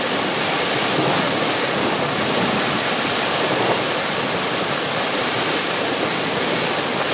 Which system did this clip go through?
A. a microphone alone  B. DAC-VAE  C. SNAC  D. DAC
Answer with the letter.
A